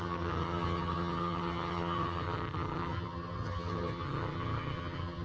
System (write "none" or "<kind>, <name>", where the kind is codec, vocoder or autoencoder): vocoder, HiFi-GAN